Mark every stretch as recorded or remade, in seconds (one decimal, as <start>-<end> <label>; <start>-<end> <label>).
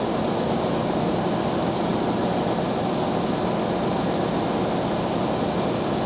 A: 0.0-6.1 recorded